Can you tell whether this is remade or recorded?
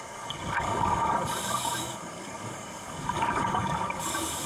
remade